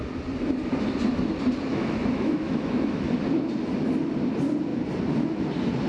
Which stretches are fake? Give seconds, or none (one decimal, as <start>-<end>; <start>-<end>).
1.7-3.0